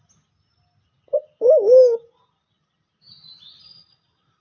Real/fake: real